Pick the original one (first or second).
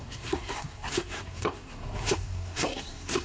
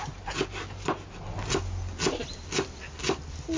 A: second